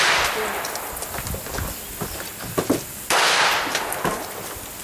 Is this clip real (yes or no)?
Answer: yes